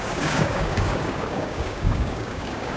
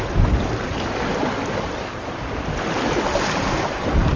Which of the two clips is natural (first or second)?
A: second